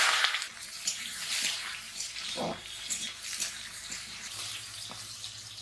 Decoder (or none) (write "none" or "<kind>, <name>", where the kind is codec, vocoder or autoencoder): vocoder, BigVGAN v2